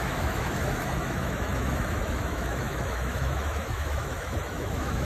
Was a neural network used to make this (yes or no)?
yes